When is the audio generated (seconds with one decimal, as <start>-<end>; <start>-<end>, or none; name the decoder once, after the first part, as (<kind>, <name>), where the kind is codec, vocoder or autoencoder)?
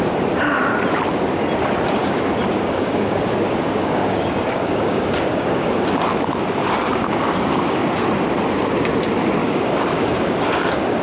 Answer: 2.0-6.0 (codec, DAC); 6.6-7.9; 9.4-11.0